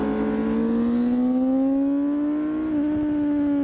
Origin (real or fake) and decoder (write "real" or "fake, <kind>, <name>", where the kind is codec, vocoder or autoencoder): real